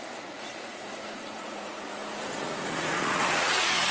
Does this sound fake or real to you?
fake